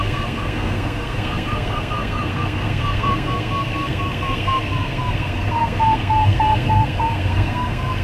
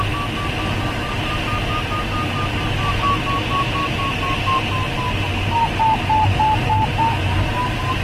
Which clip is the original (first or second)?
second